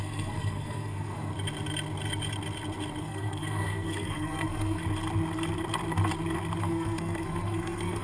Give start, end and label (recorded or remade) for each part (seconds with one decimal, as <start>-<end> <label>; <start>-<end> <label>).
0.0-1.3 remade; 1.3-3.0 recorded; 3.0-4.8 remade; 4.8-6.6 recorded; 6.6-8.0 remade